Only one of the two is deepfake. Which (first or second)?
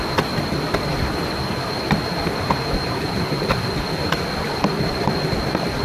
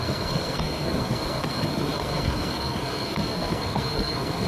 second